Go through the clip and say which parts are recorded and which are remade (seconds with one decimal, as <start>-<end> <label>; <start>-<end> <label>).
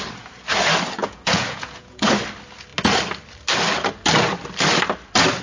0.0-1.0 recorded; 1.0-2.1 remade; 2.1-5.4 recorded